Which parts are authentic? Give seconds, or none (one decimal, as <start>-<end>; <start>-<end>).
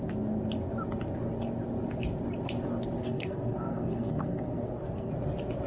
0.0-3.0; 5.1-5.7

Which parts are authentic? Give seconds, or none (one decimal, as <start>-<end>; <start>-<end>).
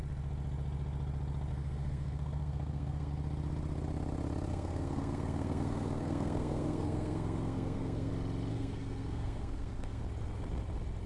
0.0-1.5; 3.1-4.5; 8.1-8.5; 10.0-11.1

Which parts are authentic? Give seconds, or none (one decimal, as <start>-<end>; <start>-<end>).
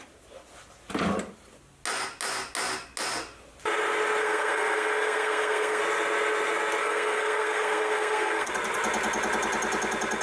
0.0-4.2; 5.8-6.8; 8.5-10.2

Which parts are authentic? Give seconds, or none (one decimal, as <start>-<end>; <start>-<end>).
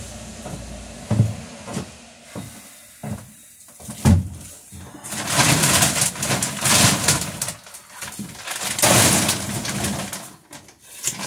0.0-11.3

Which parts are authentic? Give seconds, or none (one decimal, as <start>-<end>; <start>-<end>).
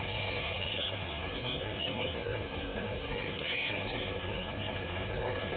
none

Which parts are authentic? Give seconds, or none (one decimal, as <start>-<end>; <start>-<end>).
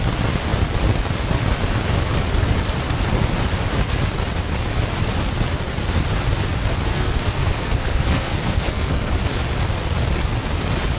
0.0-6.9; 9.1-11.0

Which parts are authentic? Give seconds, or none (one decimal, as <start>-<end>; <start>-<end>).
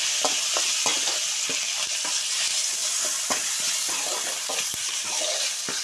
0.0-5.8